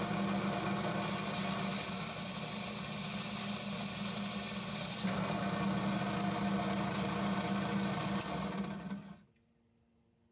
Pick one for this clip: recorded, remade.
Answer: recorded